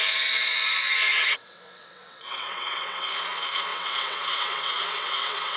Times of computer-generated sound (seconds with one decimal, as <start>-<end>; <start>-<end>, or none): 1.1-3.1; 3.7-5.6